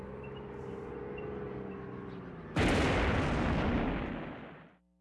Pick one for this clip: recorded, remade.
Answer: recorded